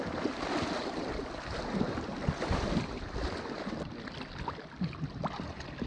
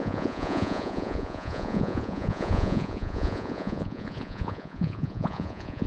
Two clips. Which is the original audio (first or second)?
first